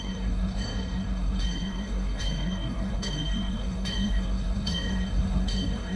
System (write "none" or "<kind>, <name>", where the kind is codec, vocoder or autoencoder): codec, SNAC